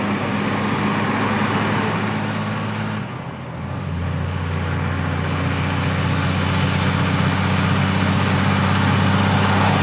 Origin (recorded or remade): recorded